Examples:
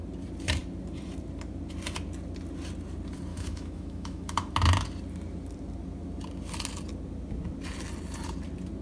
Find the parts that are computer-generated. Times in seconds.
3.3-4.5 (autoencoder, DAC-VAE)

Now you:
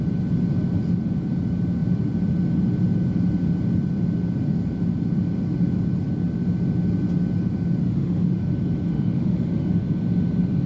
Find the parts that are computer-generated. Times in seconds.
7.8-8.4 (autoencoder, DAC-VAE); 8.9-9.7

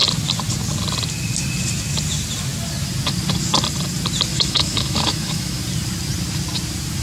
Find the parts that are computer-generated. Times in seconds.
4.3-5.6 (autoencoder, DAC-VAE)

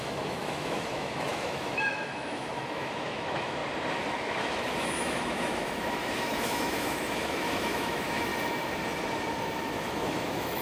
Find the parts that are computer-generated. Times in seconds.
0.0-3.6 (autoencoder, DAC-VAE); 4.1-8.3; 9.6-10.6